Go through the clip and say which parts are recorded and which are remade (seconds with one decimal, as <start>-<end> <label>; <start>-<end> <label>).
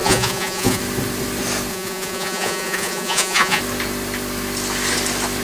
0.0-0.8 remade; 0.8-1.7 recorded; 1.7-3.6 remade; 3.6-5.4 recorded